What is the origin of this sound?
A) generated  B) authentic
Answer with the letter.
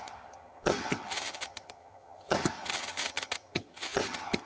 A